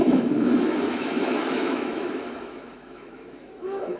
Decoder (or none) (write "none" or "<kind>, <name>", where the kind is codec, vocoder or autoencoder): autoencoder, DAC-VAE